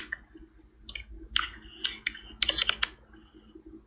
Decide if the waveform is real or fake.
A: real